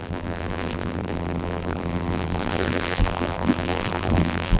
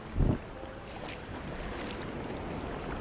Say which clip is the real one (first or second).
second